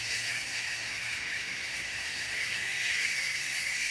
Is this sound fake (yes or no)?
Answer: yes